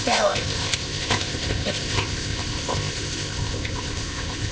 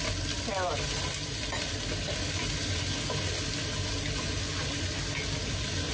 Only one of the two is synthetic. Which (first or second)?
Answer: first